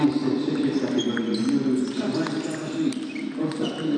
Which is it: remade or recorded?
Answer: recorded